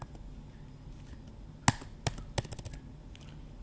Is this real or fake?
real